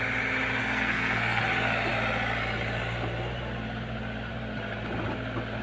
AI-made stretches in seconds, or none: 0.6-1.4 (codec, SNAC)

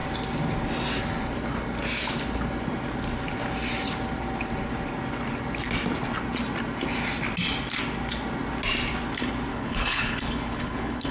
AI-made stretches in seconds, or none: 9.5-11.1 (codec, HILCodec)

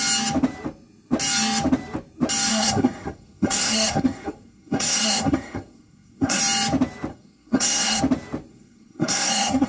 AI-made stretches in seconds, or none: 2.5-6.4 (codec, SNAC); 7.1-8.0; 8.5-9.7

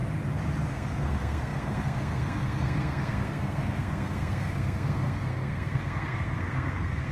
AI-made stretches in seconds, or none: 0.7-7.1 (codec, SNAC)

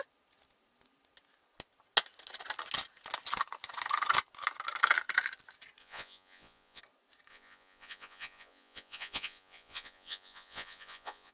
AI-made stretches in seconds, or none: 5.8-6.8 (vocoder, Vocos); 7.3-11.3

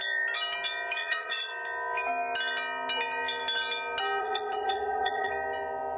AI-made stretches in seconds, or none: 1.0-1.5 (vocoder, Vocos); 4.2-5.3

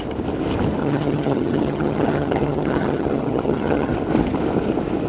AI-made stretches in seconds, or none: 0.8-3.9 (vocoder, HiFi-GAN)